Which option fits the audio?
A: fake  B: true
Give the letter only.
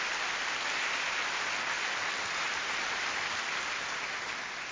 B